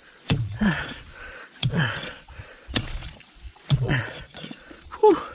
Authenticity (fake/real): fake